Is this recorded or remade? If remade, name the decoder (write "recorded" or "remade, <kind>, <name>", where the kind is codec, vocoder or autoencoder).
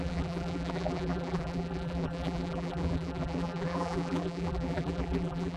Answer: remade, vocoder, BigVGAN v2